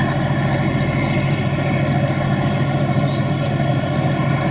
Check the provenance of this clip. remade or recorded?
recorded